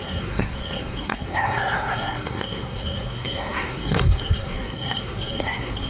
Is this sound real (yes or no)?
no